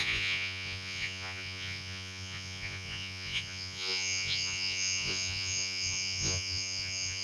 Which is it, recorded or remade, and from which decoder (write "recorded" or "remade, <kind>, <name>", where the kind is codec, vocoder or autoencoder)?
remade, vocoder, Vocos